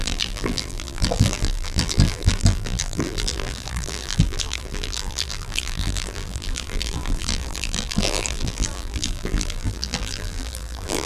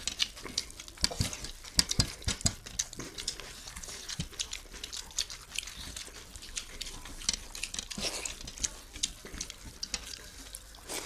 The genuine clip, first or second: second